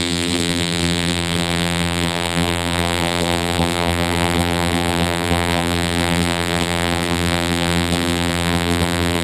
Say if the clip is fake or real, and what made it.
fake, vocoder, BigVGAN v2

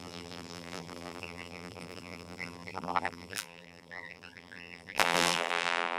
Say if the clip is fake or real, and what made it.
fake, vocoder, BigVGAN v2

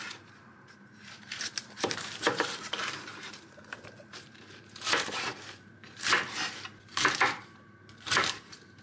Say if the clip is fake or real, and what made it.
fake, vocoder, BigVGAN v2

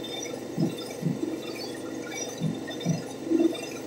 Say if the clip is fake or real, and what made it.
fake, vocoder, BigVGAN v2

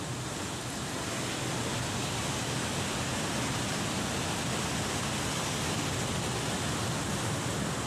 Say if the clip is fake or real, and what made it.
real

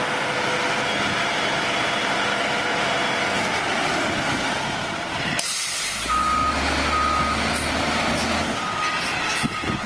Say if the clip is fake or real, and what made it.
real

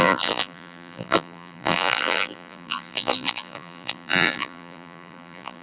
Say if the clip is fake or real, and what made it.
fake, vocoder, BigVGAN v2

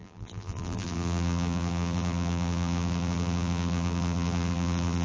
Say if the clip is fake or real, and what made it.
fake, vocoder, BigVGAN v2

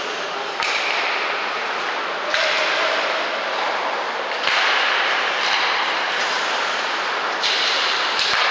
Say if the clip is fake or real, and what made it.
fake, vocoder, BigVGAN v2